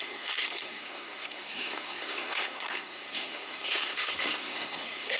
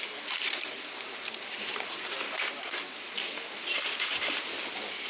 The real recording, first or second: second